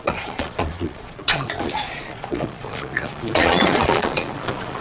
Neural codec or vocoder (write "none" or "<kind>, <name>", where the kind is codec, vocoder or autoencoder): vocoder, Vocos